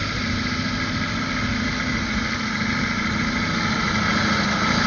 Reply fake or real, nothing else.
real